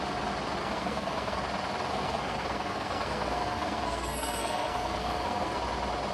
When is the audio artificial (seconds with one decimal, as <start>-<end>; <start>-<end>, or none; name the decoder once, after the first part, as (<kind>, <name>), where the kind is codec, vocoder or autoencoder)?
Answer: 0.6-1.4 (codec, SNAC); 1.9-5.6